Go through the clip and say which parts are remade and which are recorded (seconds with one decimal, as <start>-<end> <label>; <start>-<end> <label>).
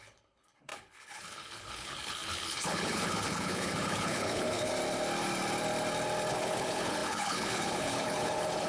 0.0-4.7 remade; 4.7-6.3 recorded; 6.3-8.7 remade